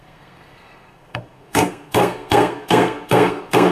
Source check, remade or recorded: remade